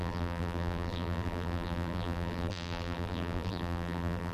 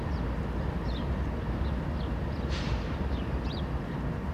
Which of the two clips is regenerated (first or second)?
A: first